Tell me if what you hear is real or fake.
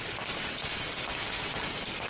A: real